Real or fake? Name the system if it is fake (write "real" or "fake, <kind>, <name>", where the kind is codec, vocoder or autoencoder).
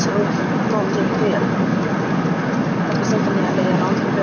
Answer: real